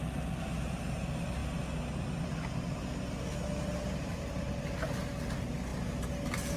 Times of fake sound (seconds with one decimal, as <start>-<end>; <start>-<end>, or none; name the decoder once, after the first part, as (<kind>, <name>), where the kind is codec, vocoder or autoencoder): none